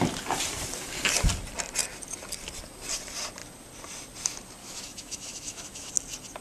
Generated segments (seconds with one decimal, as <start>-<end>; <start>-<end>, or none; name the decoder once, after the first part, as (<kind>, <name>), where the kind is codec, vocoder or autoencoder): 4.6-5.9 (autoencoder, DAC-VAE)